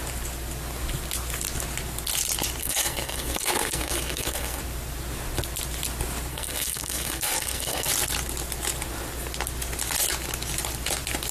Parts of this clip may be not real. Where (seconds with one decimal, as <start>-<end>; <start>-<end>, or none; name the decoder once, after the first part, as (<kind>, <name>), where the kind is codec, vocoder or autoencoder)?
2.6-4.6 (codec, SNAC); 6.3-7.9